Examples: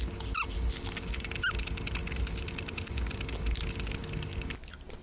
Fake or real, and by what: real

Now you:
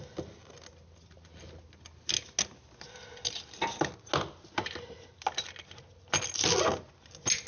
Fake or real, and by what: real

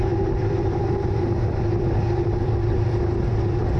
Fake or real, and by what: fake, vocoder, BigVGAN v2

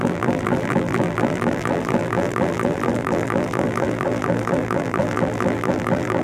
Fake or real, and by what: fake, vocoder, BigVGAN v2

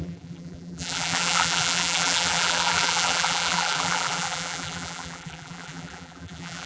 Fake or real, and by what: fake, vocoder, BigVGAN v2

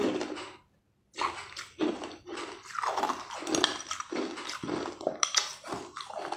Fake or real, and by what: real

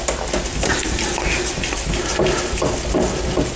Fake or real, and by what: real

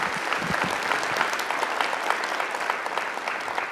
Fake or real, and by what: real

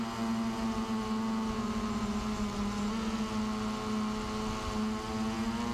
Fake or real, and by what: real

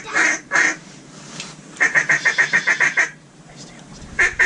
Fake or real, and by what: fake, vocoder, BigVGAN v2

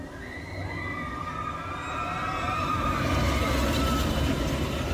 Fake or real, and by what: real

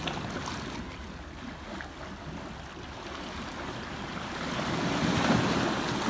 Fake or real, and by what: real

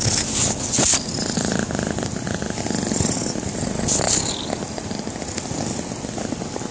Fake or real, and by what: real